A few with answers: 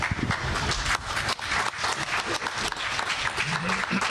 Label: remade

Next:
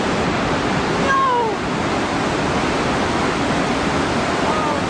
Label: remade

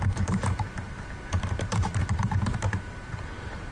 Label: remade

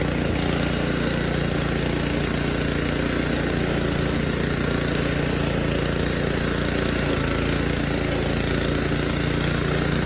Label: recorded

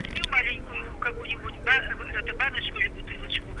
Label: recorded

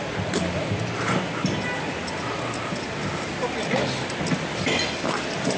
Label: recorded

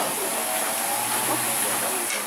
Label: recorded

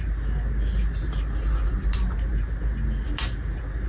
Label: recorded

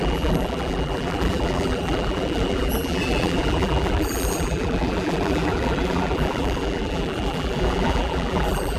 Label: remade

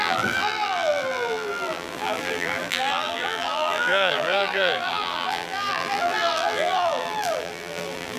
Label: remade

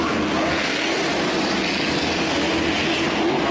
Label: recorded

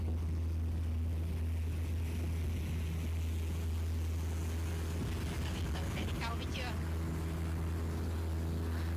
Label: recorded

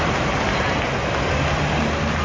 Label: recorded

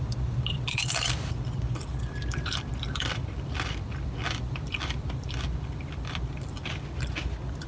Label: remade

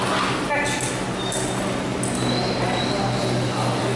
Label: recorded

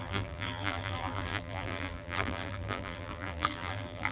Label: remade